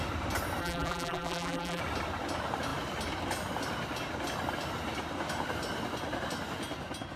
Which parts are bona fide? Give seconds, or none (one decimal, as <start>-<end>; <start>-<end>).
0.0-0.6; 1.8-7.2